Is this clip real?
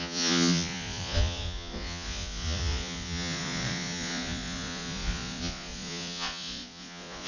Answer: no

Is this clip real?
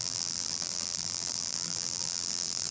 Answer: no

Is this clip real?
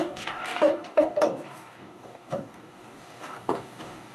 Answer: no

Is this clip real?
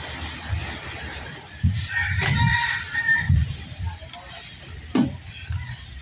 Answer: no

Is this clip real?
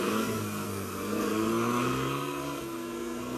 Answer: no